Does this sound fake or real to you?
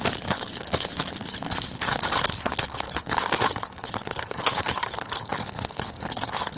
fake